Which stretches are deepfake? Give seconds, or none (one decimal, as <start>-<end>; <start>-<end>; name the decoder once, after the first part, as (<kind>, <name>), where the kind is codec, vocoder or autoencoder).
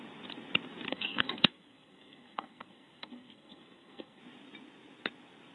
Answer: 0.9-4.2 (codec, SNAC)